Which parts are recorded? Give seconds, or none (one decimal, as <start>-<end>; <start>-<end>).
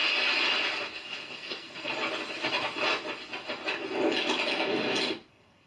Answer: 0.0-0.9; 1.9-5.3